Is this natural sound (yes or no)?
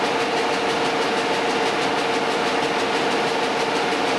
yes